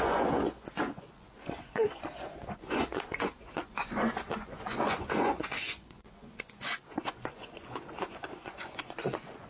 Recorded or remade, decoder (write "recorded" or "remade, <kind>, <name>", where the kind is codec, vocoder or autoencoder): remade, vocoder, Vocos